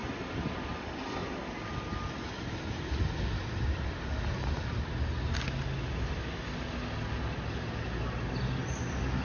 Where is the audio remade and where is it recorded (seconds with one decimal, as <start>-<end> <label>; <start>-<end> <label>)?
0.0-9.2 recorded